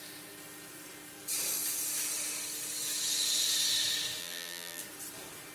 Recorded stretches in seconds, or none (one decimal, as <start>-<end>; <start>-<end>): 0.0-4.2; 4.8-5.5